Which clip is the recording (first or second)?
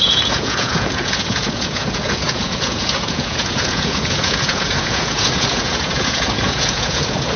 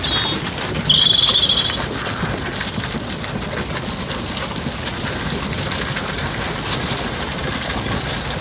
second